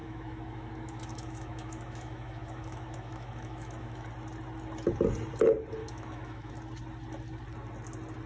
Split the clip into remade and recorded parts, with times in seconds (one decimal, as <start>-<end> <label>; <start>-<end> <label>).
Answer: 0.0-4.1 remade; 4.1-5.8 recorded; 5.8-6.5 remade; 6.5-8.3 recorded